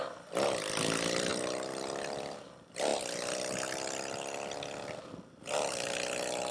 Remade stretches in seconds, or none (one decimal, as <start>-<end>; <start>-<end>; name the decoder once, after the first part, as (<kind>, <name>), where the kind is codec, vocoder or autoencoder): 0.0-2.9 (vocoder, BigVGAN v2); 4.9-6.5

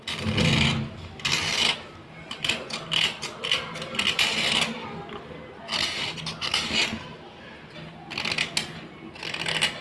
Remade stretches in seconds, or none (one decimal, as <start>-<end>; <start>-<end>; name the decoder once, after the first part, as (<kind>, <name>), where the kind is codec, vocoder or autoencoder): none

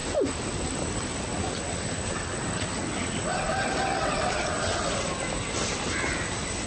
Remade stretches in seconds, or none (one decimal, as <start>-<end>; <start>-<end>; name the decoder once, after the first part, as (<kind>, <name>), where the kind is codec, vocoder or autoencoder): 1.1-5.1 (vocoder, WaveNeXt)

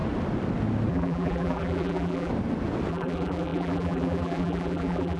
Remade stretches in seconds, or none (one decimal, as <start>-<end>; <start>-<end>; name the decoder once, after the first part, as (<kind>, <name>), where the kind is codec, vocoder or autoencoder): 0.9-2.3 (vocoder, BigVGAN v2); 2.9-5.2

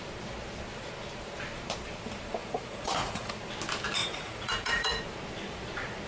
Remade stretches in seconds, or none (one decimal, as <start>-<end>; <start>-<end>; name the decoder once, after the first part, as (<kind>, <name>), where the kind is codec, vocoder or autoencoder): 2.4-3.3 (vocoder, Vocos); 4.0-5.0

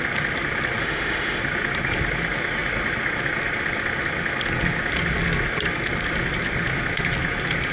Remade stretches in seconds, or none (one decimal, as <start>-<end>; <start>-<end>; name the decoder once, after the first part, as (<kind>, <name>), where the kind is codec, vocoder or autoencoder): 0.8-1.4 (autoencoder, DAC-VAE)